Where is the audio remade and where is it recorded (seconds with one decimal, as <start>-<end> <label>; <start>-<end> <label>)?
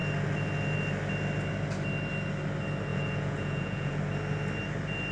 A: 0.0-2.9 recorded; 2.9-4.0 remade; 4.0-5.1 recorded